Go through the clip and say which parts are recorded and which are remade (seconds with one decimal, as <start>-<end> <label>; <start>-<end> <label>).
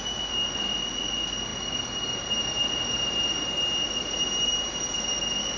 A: 0.0-5.6 recorded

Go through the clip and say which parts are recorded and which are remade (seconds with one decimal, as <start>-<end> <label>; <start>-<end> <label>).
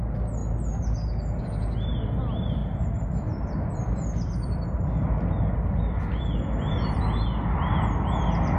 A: 0.0-2.6 recorded; 2.6-7.0 remade; 7.0-8.6 recorded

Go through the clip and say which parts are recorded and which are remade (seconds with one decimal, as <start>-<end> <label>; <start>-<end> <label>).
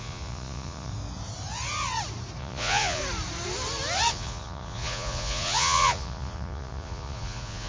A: 0.0-0.9 remade; 0.9-2.4 recorded; 2.4-3.0 remade; 3.0-4.1 recorded; 4.1-7.7 remade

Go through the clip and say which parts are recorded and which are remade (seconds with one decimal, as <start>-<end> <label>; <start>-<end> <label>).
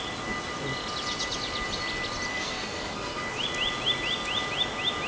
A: 0.0-2.3 recorded; 2.3-3.2 remade; 3.2-5.1 recorded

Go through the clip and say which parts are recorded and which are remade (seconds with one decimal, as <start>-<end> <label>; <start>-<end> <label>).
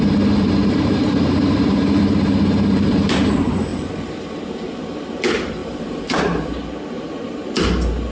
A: 0.0-8.1 remade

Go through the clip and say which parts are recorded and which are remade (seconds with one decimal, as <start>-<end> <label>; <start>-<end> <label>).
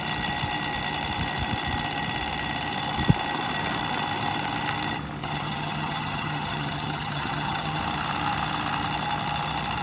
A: 0.0-5.2 recorded; 5.2-7.8 remade; 7.8-9.8 recorded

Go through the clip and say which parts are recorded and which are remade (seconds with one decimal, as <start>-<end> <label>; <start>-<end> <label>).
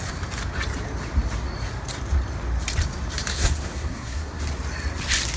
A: 0.0-3.3 recorded; 3.3-4.4 remade; 4.4-5.4 recorded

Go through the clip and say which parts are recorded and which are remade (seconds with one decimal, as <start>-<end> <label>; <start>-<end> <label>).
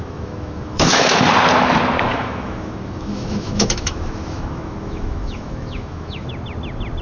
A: 0.0-1.2 remade; 1.2-2.1 recorded; 2.1-6.3 remade; 6.3-7.0 recorded